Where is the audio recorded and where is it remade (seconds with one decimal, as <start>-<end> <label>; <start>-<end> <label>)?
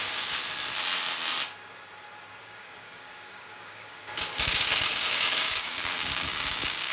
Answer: 0.0-0.4 remade; 0.4-2.4 recorded; 2.4-6.9 remade